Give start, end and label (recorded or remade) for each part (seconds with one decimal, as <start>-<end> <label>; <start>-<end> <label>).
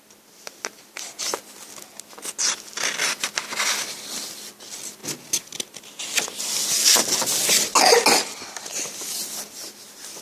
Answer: 0.0-10.2 recorded